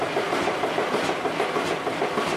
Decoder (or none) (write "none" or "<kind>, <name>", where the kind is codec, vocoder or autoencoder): none